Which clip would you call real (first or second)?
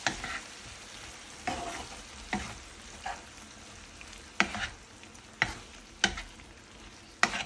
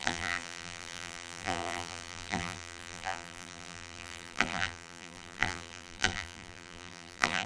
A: first